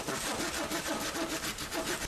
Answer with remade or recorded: recorded